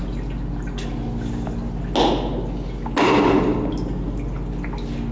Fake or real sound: real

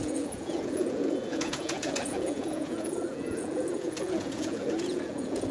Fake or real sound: fake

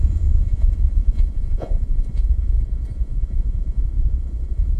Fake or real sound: fake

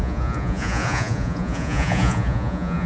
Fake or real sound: fake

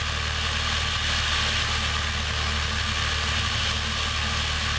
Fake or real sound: real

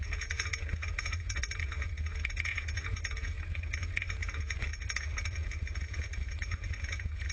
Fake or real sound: fake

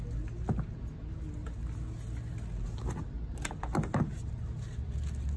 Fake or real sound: real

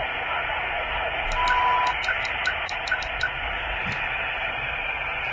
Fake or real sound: real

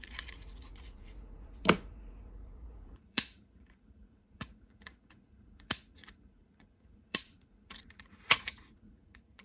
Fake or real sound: fake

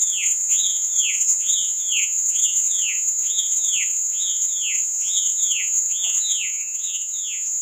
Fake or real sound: fake